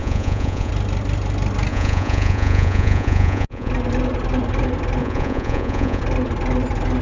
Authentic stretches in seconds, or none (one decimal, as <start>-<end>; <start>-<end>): 0.7-1.7; 3.7-5.0; 6.0-7.0